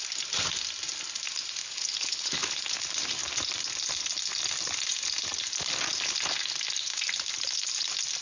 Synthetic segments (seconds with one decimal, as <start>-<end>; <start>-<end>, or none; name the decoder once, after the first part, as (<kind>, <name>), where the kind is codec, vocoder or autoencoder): 1.6-2.6 (codec, HILCodec)